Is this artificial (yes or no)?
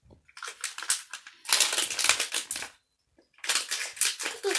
no